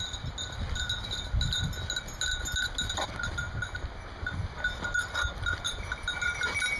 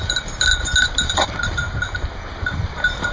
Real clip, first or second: first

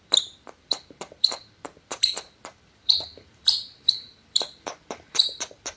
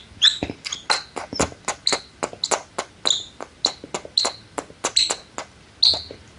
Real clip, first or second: second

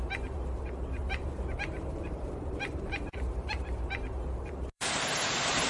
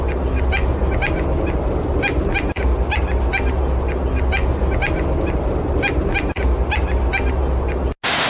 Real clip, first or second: second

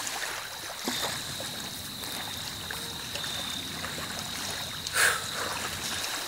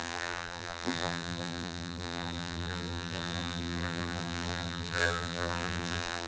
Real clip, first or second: first